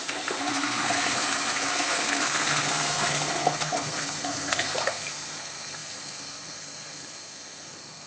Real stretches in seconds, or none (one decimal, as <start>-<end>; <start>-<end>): none